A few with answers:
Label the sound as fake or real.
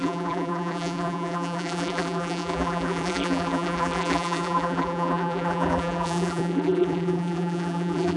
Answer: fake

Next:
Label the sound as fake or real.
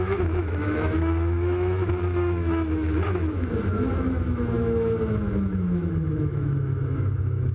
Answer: fake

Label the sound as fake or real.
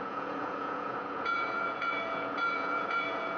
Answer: fake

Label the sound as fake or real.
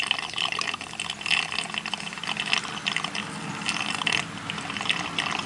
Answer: real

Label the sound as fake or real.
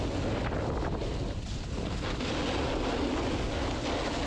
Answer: real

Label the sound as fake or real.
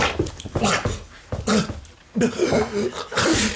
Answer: real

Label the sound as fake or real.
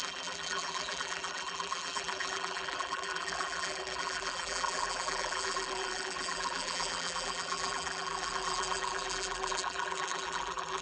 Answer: fake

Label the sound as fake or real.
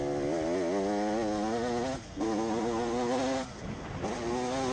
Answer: real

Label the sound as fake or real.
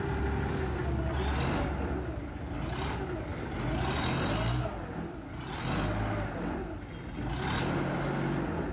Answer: real